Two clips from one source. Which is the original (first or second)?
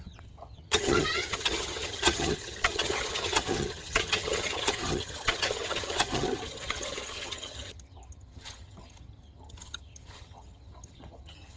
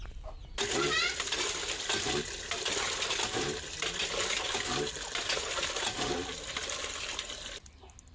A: second